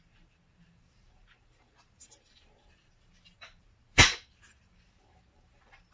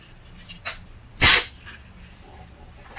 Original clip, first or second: second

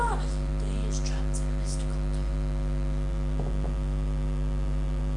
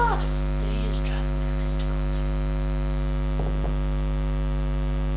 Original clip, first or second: second